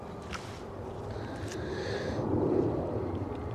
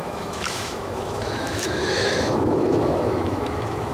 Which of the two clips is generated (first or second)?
second